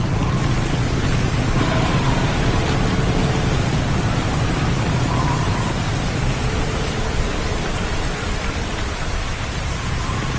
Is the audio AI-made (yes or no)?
no